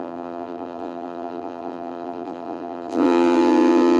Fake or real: fake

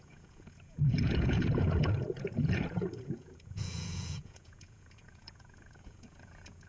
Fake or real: fake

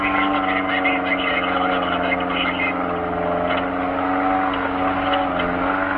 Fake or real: real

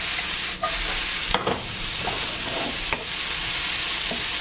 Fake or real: real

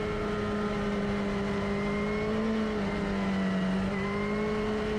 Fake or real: real